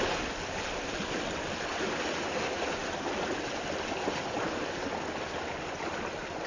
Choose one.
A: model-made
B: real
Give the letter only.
B